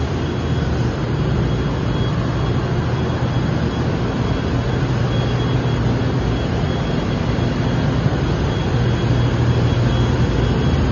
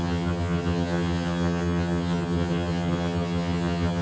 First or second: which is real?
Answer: first